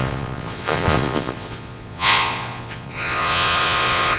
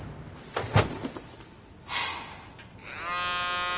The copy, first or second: first